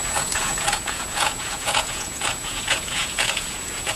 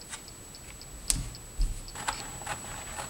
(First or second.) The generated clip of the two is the first